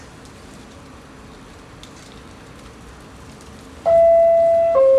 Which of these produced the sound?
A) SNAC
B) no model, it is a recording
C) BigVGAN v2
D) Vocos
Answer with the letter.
B